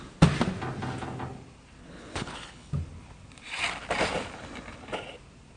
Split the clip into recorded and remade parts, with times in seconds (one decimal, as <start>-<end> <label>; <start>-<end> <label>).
0.0-1.8 recorded; 1.8-2.7 remade; 2.7-5.6 recorded